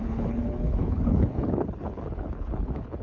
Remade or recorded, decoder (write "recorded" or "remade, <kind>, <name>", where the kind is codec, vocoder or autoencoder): remade, codec, HILCodec